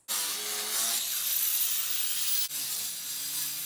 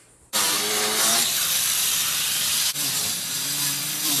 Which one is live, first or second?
first